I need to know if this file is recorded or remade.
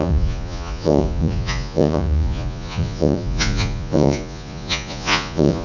remade